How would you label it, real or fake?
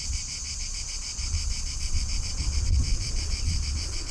fake